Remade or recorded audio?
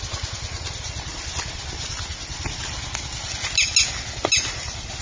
recorded